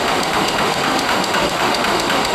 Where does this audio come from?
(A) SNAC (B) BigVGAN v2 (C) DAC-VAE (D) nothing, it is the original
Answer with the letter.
C